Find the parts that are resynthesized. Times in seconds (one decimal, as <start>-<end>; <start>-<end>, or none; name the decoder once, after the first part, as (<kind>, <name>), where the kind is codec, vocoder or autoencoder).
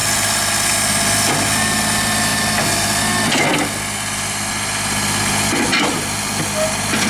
none